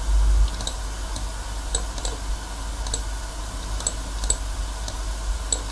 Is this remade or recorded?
recorded